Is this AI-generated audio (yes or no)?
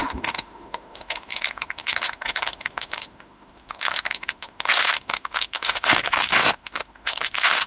yes